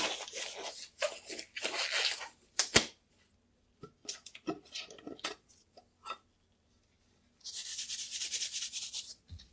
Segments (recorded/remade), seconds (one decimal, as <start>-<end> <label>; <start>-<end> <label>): 0.0-4.0 recorded; 4.0-5.5 remade; 5.5-7.7 recorded; 7.7-9.5 remade